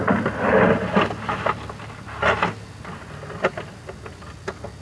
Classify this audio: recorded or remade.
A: recorded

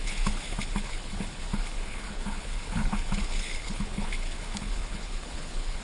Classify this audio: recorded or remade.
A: remade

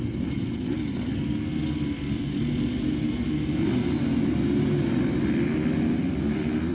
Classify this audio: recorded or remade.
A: recorded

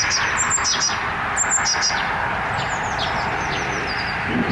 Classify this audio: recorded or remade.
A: recorded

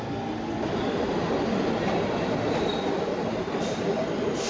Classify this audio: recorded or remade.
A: recorded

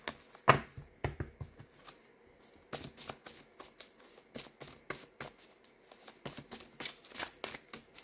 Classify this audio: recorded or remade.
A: recorded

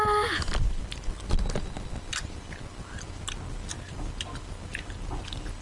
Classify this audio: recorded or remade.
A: recorded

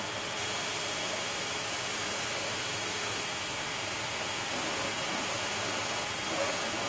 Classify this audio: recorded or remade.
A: recorded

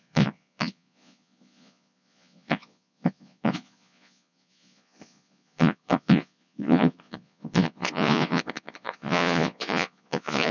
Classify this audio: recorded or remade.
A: remade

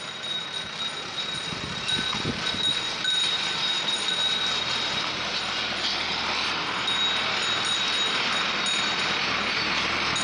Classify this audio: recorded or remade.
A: recorded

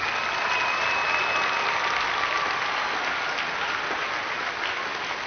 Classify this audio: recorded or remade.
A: recorded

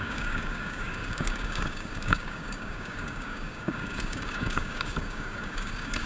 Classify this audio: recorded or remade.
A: remade